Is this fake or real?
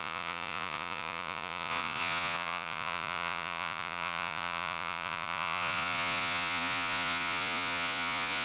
fake